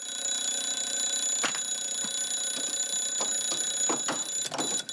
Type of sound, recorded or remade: recorded